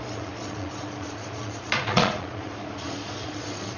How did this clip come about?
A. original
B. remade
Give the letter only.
B